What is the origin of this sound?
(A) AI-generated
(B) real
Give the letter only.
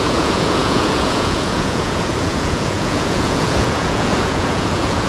A